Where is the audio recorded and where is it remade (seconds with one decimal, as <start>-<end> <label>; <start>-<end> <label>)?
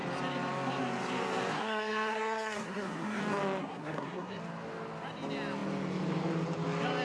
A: 0.0-1.5 recorded; 1.5-3.2 remade; 3.2-3.6 recorded; 3.6-4.4 remade; 4.4-7.0 recorded